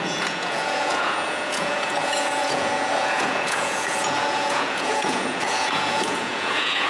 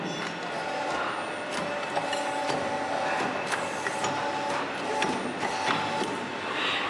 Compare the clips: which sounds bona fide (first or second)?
second